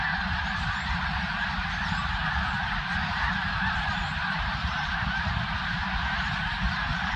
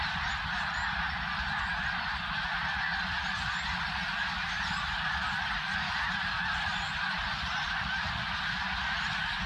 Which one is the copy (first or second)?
first